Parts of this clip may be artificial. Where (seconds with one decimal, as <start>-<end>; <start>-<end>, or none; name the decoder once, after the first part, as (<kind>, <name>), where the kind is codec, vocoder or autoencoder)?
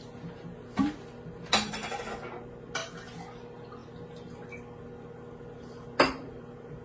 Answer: none